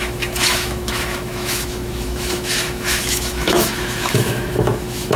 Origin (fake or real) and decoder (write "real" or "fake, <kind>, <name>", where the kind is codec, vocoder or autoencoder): fake, autoencoder, DAC-VAE